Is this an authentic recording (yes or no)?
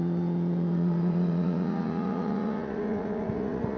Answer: no